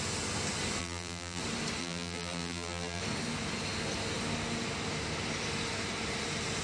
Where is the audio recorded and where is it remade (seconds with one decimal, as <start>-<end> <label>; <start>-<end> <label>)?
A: 0.0-0.8 recorded; 0.8-1.4 remade; 1.4-1.8 recorded; 1.8-3.0 remade; 3.0-6.6 recorded